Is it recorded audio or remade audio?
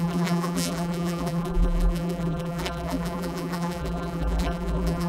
remade